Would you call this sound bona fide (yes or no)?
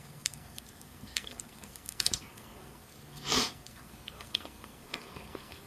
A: no